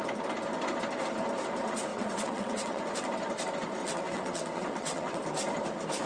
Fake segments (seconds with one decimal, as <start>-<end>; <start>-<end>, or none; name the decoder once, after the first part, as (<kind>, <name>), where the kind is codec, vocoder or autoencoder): 1.9-2.8 (vocoder, WaveNeXt); 3.8-5.2